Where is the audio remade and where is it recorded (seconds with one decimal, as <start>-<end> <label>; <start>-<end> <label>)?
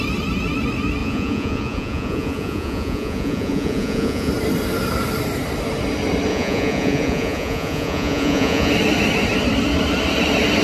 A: 0.0-1.0 recorded; 1.0-4.3 remade; 4.3-6.3 recorded; 6.3-8.7 remade; 8.7-10.6 recorded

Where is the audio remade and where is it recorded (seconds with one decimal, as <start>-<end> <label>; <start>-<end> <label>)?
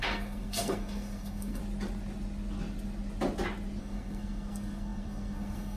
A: 0.0-1.6 remade; 1.6-3.8 recorded; 3.8-5.8 remade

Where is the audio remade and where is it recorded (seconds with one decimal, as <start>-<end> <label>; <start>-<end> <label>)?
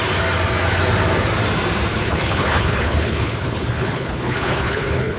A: 0.0-1.9 recorded; 1.9-5.2 remade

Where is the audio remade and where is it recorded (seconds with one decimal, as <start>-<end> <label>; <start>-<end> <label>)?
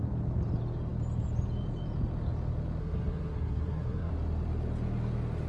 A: 0.0-2.8 recorded; 2.8-4.1 remade; 4.1-5.5 recorded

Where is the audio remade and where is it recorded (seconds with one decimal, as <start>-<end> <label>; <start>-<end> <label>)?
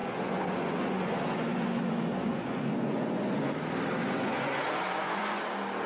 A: 0.0-3.5 remade; 3.5-4.0 recorded; 4.0-5.4 remade; 5.4-5.9 recorded